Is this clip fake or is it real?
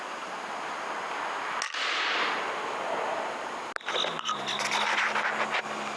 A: real